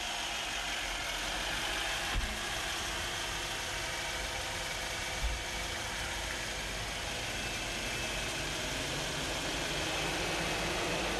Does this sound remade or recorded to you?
recorded